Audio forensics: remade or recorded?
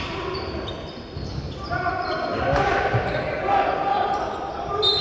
remade